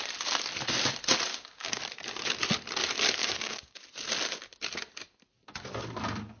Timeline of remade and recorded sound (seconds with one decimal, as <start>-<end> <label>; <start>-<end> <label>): 0.0-1.3 recorded; 1.3-1.8 remade; 1.8-3.2 recorded; 3.2-3.8 remade; 3.8-6.4 recorded